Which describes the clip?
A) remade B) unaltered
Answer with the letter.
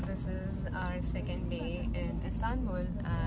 B